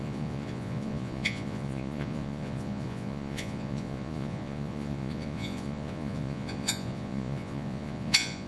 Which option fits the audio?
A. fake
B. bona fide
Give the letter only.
A